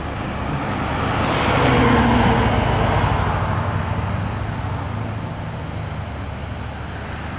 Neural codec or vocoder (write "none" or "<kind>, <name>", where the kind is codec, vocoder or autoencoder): none